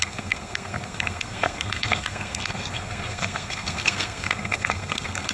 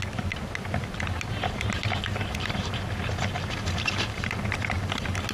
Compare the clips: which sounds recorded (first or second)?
second